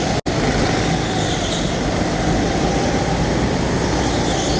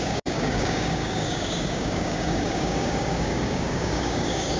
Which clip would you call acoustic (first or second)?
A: first